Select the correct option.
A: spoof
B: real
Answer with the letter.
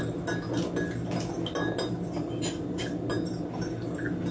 B